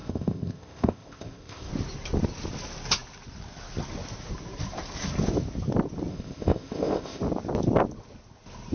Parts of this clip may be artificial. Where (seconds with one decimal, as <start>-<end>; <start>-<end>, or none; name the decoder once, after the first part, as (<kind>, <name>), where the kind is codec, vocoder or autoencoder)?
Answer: 0.0-1.7 (codec, ZipCodec); 6.1-7.2